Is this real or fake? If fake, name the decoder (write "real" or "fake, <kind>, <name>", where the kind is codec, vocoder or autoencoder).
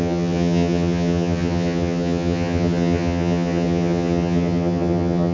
fake, vocoder, HiFi-GAN